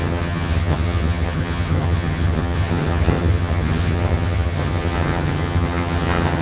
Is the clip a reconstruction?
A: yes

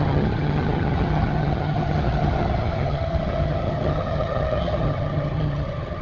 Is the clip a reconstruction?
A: yes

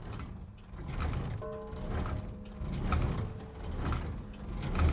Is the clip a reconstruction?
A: no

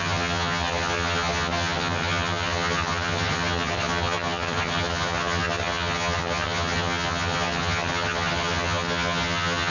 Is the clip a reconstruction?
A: yes